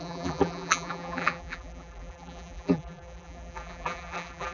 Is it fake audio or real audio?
fake